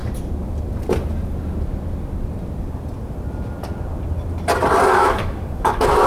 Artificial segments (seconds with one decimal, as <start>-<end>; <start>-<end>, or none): 4.9-6.1